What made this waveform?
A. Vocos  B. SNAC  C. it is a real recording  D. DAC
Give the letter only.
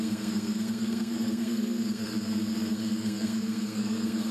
B